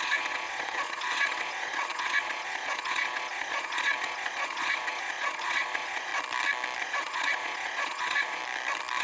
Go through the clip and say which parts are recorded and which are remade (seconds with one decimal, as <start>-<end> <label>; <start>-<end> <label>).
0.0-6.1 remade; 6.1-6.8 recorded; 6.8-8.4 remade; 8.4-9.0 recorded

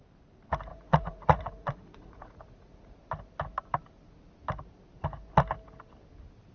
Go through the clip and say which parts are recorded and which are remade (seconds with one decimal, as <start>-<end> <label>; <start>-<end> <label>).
0.0-0.7 recorded; 0.7-3.0 remade; 3.0-6.5 recorded

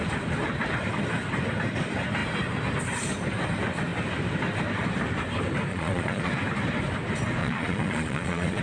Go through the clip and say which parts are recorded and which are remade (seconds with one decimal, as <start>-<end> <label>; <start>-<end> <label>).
0.0-5.7 recorded; 5.7-6.3 remade; 6.3-7.4 recorded; 7.4-8.6 remade

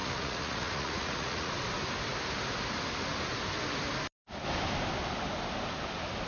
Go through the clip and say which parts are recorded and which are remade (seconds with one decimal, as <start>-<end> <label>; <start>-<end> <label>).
0.0-1.5 remade; 1.5-6.3 recorded

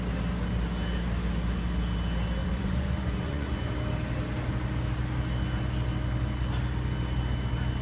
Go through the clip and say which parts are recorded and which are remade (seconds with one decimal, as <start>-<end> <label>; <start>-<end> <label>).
0.0-2.4 recorded; 2.4-3.7 remade; 3.7-7.8 recorded